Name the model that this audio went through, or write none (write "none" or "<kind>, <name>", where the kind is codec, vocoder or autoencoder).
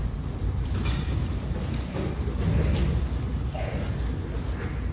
none